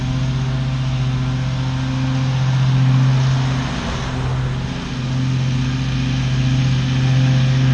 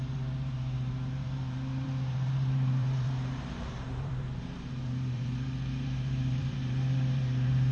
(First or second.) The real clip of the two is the first